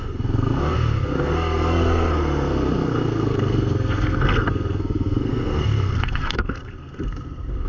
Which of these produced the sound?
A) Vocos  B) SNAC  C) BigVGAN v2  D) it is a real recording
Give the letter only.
B